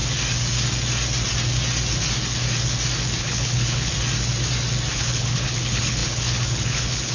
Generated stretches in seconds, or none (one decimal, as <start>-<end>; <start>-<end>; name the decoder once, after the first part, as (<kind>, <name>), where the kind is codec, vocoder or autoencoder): 3.2-3.9 (codec, HILCodec); 4.9-7.1